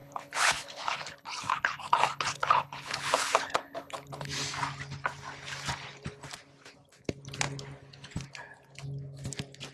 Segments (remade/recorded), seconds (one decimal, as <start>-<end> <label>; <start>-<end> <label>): 0.0-4.3 remade; 4.3-9.7 recorded

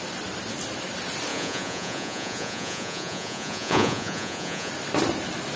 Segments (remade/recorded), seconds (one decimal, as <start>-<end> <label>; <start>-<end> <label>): 0.0-1.3 recorded; 1.3-4.7 remade; 4.7-5.6 recorded

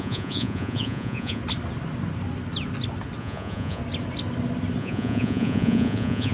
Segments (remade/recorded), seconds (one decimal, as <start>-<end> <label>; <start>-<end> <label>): 0.0-1.4 remade; 1.4-3.2 recorded; 3.2-3.8 remade; 3.8-4.8 recorded; 4.8-6.3 remade

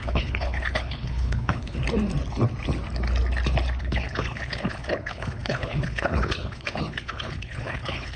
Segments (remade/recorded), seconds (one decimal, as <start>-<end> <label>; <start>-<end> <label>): 0.0-1.8 remade; 1.8-3.8 recorded; 3.8-8.2 remade